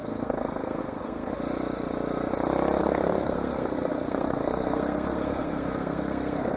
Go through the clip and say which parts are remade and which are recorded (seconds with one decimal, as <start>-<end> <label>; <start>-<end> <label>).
0.0-1.3 remade; 1.3-2.8 recorded; 2.8-6.6 remade